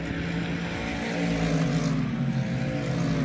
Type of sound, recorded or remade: recorded